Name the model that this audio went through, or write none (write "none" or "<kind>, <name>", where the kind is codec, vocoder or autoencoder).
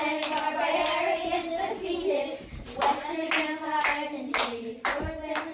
vocoder, BigVGAN v2